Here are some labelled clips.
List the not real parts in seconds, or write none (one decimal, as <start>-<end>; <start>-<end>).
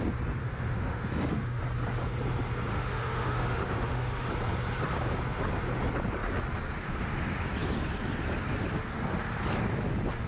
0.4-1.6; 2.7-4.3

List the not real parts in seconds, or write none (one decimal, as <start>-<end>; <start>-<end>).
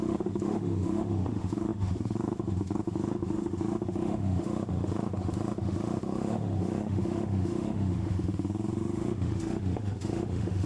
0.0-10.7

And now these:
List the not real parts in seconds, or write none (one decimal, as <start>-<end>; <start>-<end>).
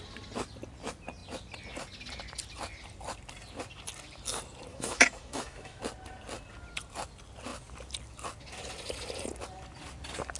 4.7-5.8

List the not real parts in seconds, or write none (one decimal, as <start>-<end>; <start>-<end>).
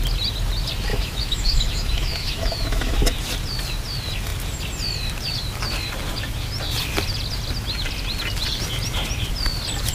0.9-3.0